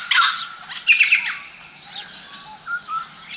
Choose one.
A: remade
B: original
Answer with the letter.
B